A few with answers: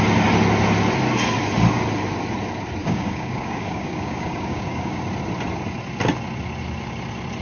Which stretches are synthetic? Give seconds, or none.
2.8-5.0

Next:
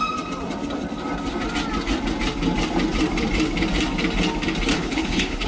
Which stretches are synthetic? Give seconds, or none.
4.7-5.5

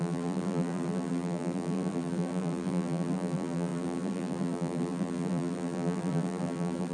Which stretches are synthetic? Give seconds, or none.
0.0-6.9

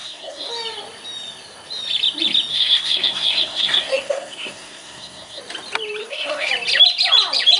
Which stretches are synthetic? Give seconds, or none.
0.0-0.5; 2.5-5.4; 6.0-6.5

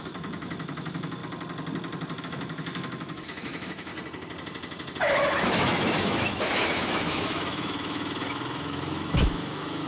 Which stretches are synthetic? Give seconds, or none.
0.0-1.2; 2.2-3.9; 5.0-9.9

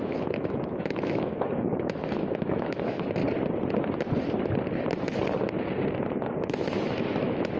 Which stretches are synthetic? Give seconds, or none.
0.0-3.2; 6.4-7.6